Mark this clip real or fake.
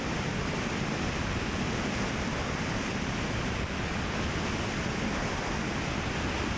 real